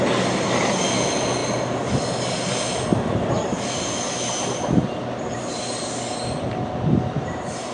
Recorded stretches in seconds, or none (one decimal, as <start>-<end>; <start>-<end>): 0.0-7.7